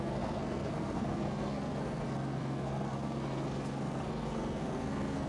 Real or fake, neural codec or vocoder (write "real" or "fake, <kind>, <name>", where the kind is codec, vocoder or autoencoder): fake, codec, SNAC